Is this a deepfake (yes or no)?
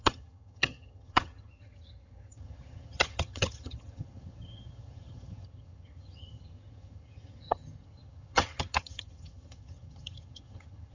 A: yes